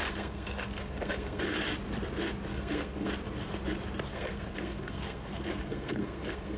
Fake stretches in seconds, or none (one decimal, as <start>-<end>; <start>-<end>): 0.0-1.4; 2.5-3.1; 4.1-6.6